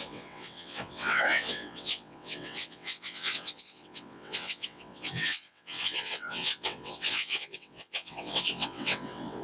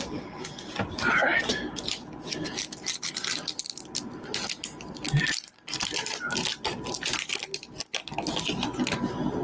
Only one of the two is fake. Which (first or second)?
first